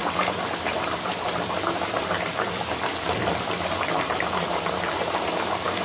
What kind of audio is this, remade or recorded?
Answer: remade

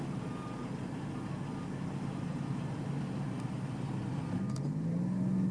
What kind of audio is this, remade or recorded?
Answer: recorded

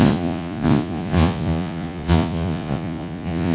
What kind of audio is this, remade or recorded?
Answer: remade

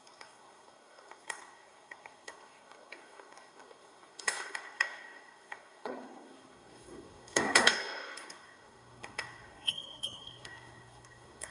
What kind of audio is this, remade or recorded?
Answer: remade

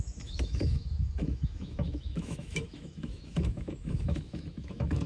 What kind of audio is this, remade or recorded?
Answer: remade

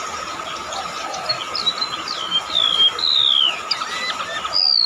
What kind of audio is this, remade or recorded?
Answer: recorded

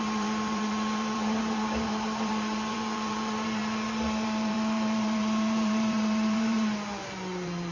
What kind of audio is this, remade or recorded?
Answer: remade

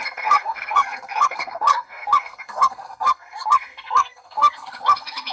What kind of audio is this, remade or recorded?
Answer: remade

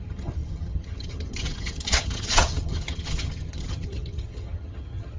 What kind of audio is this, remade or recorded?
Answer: remade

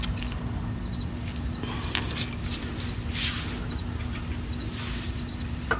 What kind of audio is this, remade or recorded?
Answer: recorded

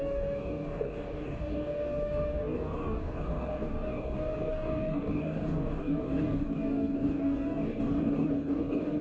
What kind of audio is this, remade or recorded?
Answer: remade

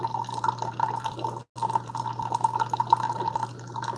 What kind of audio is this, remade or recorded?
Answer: recorded